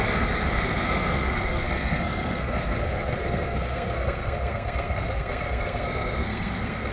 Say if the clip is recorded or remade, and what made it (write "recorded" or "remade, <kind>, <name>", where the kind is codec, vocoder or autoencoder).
remade, codec, SNAC